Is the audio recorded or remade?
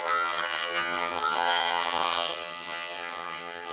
remade